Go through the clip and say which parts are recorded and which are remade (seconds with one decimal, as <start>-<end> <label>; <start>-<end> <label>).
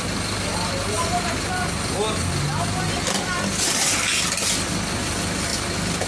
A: 0.0-6.1 recorded